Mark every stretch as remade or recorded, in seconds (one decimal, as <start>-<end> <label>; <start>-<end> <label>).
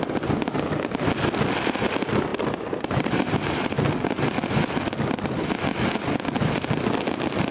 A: 0.0-2.3 recorded; 2.3-4.8 remade; 4.8-7.5 recorded